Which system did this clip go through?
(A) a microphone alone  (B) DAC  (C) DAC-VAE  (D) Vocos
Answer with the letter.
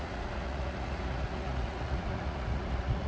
D